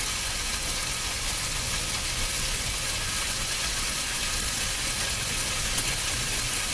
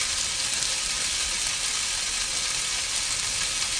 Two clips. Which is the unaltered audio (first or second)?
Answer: second